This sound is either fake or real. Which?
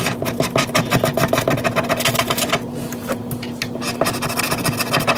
real